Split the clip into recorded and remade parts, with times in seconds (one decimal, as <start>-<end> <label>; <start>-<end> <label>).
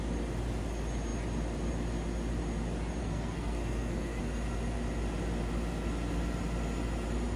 0.0-3.0 recorded; 3.0-4.2 remade; 4.2-7.4 recorded